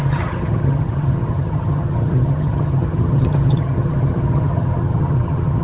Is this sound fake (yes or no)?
yes